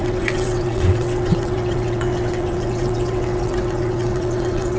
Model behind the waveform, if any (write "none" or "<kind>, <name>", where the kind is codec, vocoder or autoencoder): vocoder, WaveNeXt